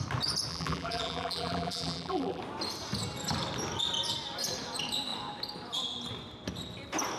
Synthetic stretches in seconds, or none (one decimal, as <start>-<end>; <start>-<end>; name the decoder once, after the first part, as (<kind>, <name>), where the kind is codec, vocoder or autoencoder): 0.5-2.4 (vocoder, BigVGAN v2)